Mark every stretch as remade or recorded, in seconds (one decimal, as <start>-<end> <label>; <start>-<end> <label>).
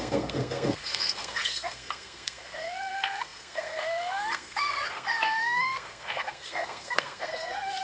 0.0-7.8 remade